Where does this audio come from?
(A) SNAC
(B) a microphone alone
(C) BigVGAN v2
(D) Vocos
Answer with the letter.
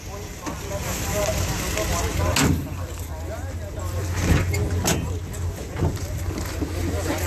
B